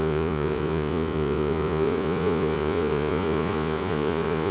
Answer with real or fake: fake